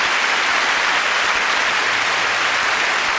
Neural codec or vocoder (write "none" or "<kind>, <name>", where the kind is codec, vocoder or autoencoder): none